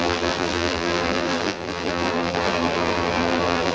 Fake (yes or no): yes